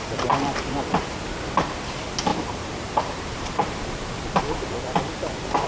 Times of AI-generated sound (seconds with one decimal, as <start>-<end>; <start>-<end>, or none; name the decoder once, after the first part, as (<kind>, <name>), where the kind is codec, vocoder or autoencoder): 2.3-3.5 (vocoder, BigVGAN v2)

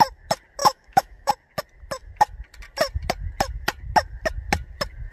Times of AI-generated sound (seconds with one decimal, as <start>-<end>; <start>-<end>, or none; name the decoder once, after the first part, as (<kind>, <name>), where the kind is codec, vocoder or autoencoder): 0.6-1.3 (autoencoder, DAC-VAE)

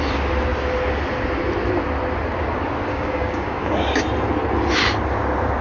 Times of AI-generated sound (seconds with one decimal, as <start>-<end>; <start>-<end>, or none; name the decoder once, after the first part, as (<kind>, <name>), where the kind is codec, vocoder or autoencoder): 2.9-4.0 (codec, DAC)

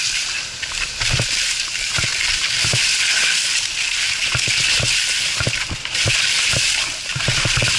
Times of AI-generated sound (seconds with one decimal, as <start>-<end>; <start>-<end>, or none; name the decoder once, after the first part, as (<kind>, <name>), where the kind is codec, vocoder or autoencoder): none

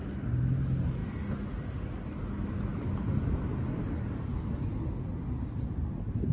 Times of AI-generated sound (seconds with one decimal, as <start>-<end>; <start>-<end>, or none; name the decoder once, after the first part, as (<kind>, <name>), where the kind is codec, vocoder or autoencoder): none

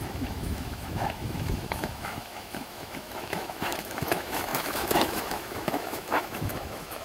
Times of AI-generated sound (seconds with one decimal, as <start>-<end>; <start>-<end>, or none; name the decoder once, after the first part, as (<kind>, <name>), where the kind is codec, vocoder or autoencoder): 0.0-7.0 (autoencoder, DAC-VAE)